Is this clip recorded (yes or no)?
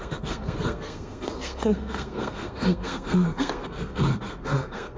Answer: no